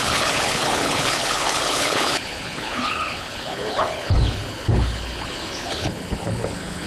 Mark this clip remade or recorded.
remade